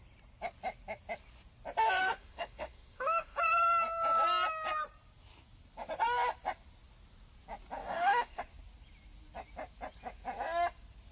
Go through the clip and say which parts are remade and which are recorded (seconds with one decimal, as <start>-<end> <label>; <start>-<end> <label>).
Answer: 0.0-2.0 recorded; 2.0-3.4 remade; 3.4-7.8 recorded; 7.8-8.4 remade; 8.4-11.1 recorded